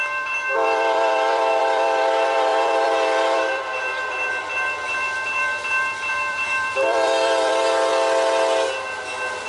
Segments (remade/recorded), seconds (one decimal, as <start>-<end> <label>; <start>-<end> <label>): 0.0-7.9 remade; 7.9-9.5 recorded